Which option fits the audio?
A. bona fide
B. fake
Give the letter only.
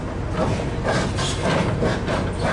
A